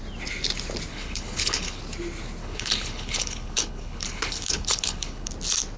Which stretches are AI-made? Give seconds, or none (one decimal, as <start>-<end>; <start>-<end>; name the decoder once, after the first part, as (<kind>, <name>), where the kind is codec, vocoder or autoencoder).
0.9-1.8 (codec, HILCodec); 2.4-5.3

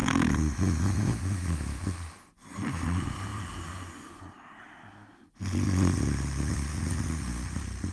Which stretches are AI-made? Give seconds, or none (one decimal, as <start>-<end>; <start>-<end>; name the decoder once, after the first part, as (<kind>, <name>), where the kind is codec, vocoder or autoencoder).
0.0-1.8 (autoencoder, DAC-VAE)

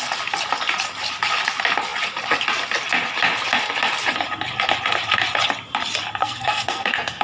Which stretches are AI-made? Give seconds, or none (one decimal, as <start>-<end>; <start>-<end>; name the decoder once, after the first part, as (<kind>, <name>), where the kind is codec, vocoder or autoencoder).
6.2-7.2 (codec, SNAC)

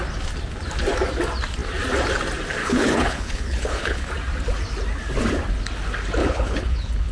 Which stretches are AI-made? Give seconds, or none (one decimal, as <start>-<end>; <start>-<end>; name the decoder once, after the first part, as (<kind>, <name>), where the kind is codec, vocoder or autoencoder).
2.6-4.1 (codec, HILCodec); 6.2-7.1